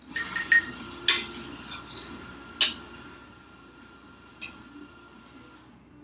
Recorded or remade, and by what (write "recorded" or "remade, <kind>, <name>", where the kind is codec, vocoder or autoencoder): recorded